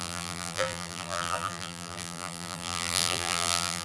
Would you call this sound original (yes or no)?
no